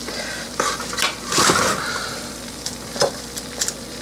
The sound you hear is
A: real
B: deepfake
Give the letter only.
B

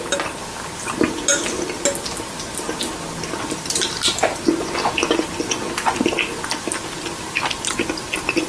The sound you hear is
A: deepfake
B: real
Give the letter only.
B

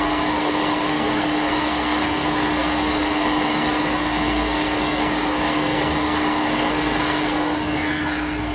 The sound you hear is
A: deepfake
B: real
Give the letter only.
A